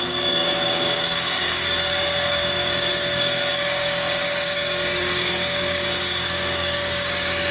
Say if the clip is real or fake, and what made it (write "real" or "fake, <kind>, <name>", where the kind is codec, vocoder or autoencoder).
fake, codec, DAC